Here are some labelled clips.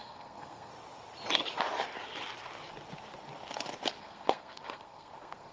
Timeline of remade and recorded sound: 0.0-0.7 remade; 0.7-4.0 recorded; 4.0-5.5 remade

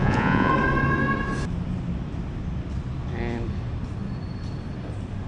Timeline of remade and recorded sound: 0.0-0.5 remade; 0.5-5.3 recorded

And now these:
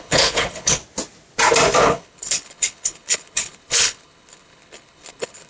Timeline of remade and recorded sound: 0.0-0.8 remade; 0.8-1.8 recorded; 1.8-5.5 remade

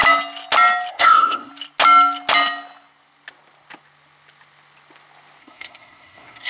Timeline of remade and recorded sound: 0.0-0.9 recorded; 0.9-1.5 remade; 1.5-5.4 recorded; 5.4-6.5 remade

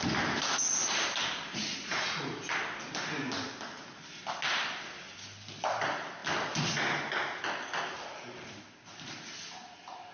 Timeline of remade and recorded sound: 0.0-1.5 recorded; 1.5-2.4 remade; 2.4-10.1 recorded